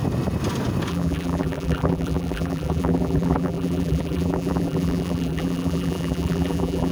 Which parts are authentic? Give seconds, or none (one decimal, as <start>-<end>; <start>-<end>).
0.0-0.9